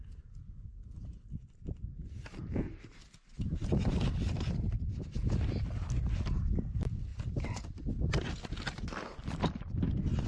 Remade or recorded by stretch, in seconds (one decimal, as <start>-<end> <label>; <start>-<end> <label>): 0.0-10.3 recorded